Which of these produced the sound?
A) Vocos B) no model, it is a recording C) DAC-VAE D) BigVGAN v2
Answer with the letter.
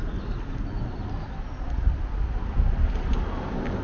B